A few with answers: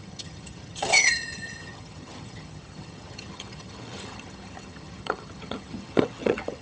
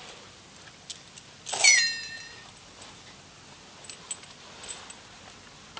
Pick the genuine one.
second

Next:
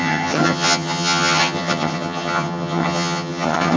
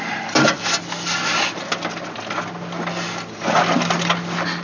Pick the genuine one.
second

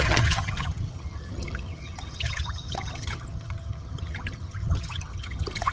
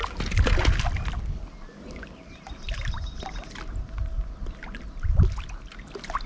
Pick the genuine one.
second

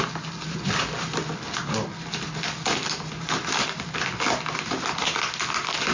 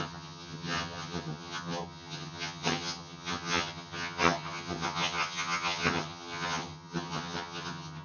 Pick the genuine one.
first